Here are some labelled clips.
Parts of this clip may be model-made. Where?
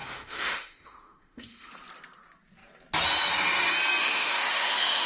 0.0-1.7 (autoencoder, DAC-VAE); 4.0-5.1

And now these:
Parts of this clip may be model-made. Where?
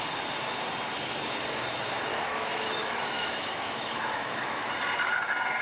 2.1-4.7 (autoencoder, DAC-VAE)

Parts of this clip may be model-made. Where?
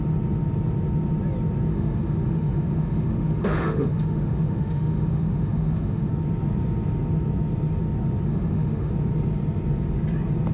1.7-6.1 (autoencoder, DAC-VAE); 8.3-8.9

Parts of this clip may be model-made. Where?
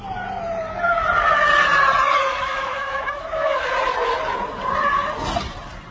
2.3-3.7 (autoencoder, DAC-VAE)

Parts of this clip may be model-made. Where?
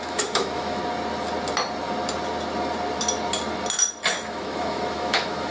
0.0-0.8 (autoencoder, DAC-VAE); 4.1-5.5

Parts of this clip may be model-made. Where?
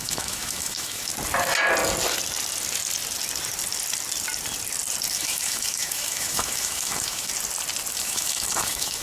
0.0-1.1 (autoencoder, DAC-VAE); 5.1-7.3; 8.0-9.0